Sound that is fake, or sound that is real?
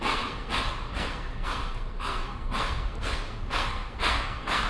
fake